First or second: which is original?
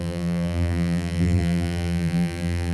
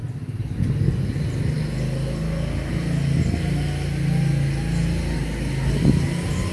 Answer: second